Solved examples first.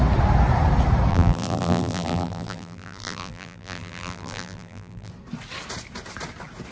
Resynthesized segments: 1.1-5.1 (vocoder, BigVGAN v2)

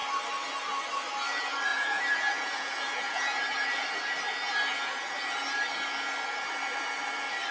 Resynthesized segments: 1.7-3.9 (vocoder, Vocos)

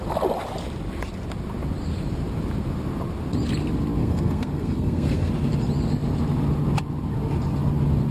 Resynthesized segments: 4.0-5.3 (codec, SNAC)

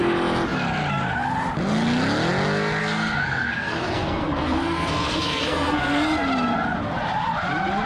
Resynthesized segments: 2.8-6.0 (codec, SNAC)

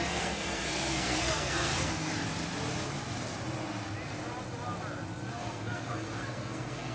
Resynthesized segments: 0.0-2.1 (codec, SNAC); 5.3-6.9

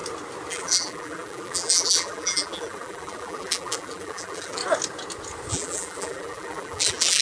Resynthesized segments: 0.5-4.6 (vocoder, BigVGAN v2); 5.5-7.2

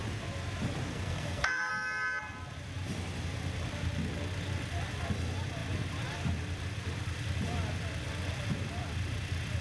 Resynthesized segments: 0.9-1.7 (codec, SNAC)